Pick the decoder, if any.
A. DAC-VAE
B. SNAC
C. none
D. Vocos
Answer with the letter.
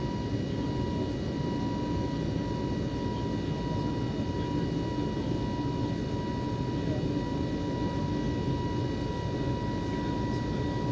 C